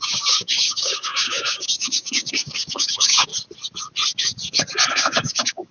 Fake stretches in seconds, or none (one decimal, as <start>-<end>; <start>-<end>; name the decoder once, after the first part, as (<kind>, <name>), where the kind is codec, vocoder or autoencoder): 0.0-3.3 (codec, DAC); 4.9-5.7